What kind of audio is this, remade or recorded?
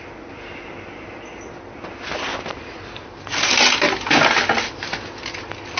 recorded